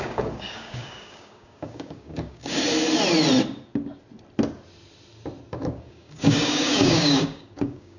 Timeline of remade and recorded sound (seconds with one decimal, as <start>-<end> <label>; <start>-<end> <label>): 0.0-2.6 remade; 2.6-5.5 recorded; 5.5-8.0 remade